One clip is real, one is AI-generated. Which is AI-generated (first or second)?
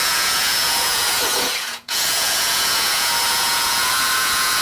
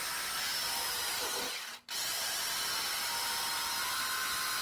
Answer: first